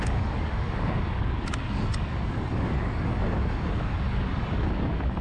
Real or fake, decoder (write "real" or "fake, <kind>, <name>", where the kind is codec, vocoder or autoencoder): fake, codec, DAC